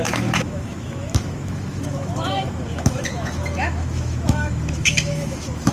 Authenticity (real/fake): fake